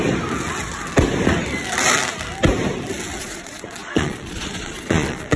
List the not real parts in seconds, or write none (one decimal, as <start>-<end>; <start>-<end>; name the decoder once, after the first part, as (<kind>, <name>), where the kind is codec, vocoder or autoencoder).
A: 3.2-5.4 (vocoder, Vocos)